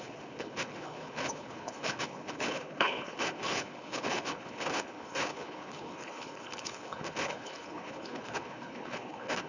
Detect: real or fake fake